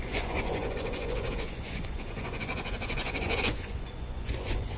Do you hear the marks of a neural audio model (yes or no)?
yes